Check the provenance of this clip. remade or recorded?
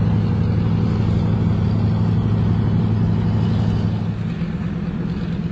recorded